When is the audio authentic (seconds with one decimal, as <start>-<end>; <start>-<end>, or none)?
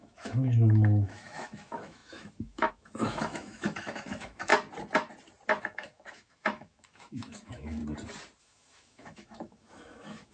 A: 4.5-5.6; 7.8-8.4